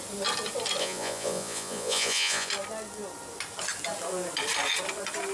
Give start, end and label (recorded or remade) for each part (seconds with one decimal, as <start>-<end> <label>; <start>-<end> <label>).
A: 0.0-0.8 recorded; 0.8-2.5 remade; 2.5-5.3 recorded